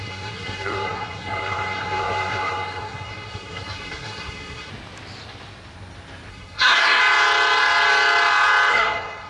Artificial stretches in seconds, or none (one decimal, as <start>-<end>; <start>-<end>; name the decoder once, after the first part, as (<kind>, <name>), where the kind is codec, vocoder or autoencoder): 0.0-4.7 (codec, SNAC); 6.3-7.0; 8.7-9.3